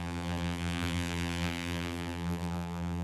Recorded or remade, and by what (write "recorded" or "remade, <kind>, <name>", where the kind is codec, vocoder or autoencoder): remade, vocoder, BigVGAN v2